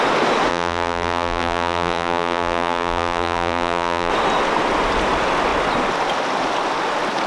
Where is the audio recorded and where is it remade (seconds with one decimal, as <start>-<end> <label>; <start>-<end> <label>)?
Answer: 0.0-0.5 recorded; 0.5-4.1 remade; 4.1-7.3 recorded